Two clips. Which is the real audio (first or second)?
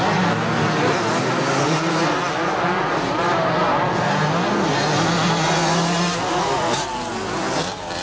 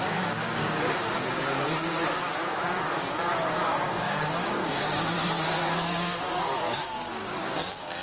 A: first